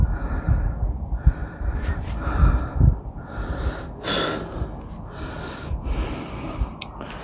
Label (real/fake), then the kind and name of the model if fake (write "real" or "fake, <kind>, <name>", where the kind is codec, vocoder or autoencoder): real